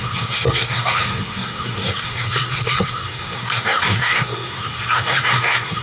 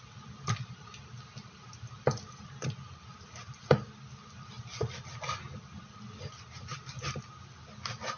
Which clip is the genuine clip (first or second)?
second